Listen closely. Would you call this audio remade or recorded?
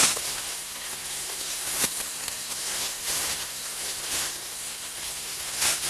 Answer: remade